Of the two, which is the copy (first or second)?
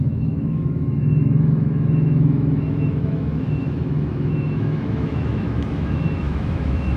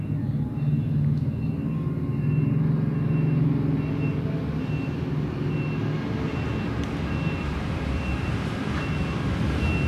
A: first